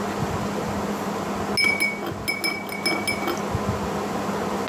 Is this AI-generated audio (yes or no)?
no